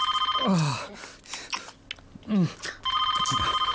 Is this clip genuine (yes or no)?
yes